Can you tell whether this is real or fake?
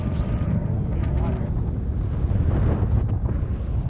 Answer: real